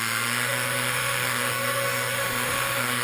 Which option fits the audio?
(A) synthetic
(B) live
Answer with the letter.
A